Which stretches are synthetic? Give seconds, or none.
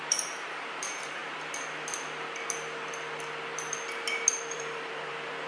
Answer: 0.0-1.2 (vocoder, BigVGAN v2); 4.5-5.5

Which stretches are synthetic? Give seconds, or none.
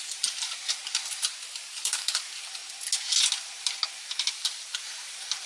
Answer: 0.0-0.6 (vocoder, BigVGAN v2); 1.4-2.6; 3.9-5.5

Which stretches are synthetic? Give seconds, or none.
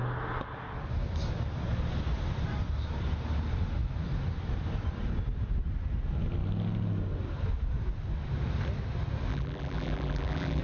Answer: 9.3-10.6 (vocoder, BigVGAN v2)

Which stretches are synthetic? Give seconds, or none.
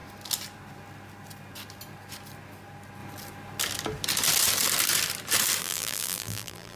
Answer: 5.6-6.8 (vocoder, BigVGAN v2)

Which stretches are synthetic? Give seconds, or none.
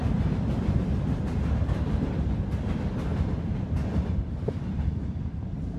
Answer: none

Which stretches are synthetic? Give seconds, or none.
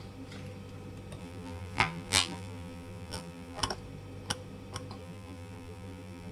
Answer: 1.2-3.6 (vocoder, BigVGAN v2); 5.0-6.3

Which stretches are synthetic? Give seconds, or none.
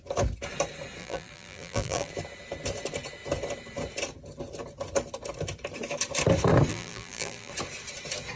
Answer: 1.0-2.1 (vocoder, BigVGAN v2); 6.7-7.5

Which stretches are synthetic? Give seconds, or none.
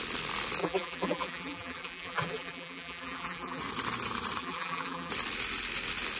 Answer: 0.6-3.6 (vocoder, BigVGAN v2); 4.4-5.1